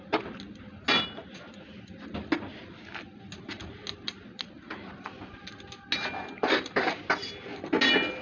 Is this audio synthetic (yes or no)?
no